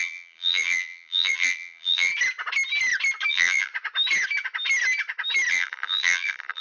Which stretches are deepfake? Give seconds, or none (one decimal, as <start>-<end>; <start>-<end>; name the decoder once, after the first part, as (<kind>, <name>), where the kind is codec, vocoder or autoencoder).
0.0-2.1 (vocoder, BigVGAN v2); 3.3-3.7; 5.5-6.6